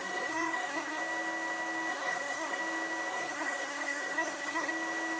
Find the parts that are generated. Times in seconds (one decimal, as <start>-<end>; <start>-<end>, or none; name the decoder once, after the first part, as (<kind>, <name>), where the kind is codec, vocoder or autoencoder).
0.0-1.0 (codec, SNAC); 1.9-2.6; 3.1-4.7